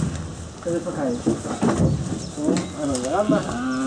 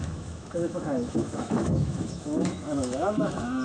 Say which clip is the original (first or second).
first